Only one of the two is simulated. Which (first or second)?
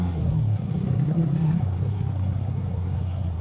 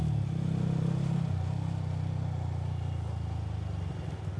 first